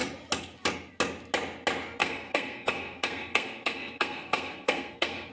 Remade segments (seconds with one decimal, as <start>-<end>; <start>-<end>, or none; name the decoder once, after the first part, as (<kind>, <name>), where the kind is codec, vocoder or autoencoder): 2.0-5.3 (codec, SNAC)